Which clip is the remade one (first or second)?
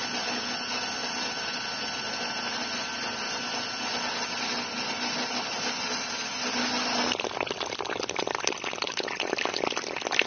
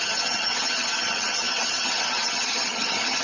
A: second